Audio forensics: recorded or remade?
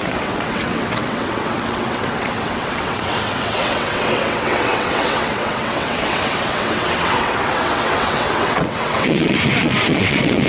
remade